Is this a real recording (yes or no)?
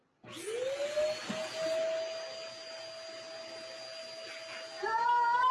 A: yes